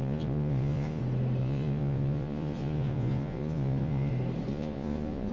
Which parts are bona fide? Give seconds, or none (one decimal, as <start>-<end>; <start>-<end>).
1.0-1.4; 4.1-4.5